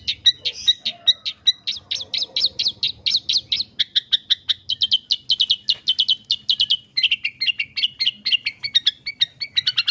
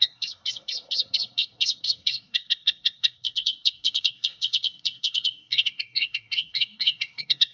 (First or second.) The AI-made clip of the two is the second